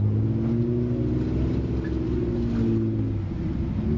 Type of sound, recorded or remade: recorded